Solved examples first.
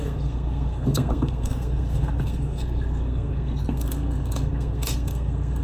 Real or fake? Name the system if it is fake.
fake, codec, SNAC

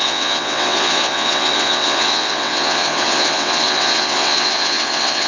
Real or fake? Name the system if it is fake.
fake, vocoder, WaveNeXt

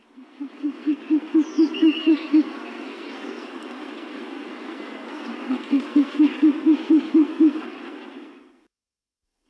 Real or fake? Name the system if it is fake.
fake, codec, SNAC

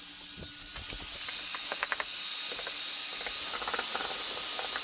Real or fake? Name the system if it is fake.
real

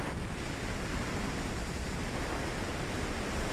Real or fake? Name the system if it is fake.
real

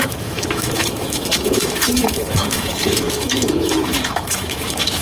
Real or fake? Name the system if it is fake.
fake, autoencoder, DAC-VAE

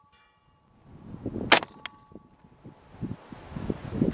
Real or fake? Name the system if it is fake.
real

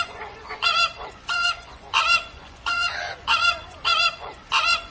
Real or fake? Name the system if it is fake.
fake, vocoder, Vocos